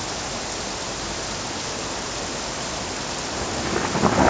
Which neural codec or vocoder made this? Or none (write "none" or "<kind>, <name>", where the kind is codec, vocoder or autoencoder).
none